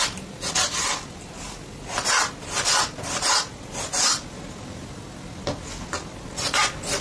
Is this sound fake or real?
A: real